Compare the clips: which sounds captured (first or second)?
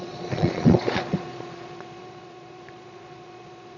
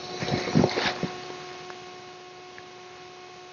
second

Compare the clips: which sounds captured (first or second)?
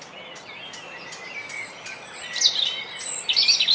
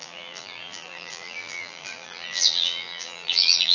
first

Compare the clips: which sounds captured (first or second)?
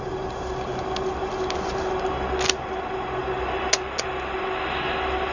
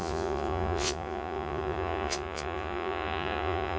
first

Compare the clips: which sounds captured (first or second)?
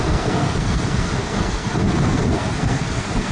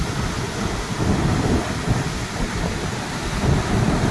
second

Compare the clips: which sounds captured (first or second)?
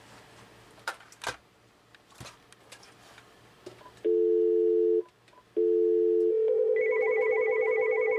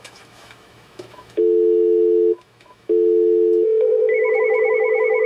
first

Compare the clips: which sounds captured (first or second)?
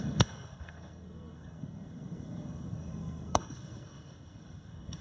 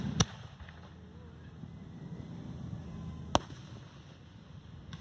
second